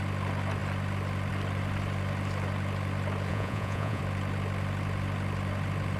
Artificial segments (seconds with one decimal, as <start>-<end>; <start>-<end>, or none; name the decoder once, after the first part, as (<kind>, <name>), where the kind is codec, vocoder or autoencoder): 3.3-4.0 (vocoder, Vocos)